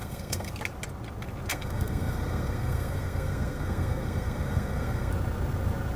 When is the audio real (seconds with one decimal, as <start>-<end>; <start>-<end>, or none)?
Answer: 0.5-1.5; 5.1-6.0